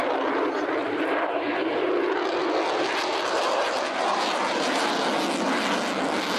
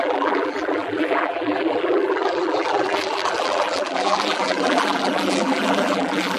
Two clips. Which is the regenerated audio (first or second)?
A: second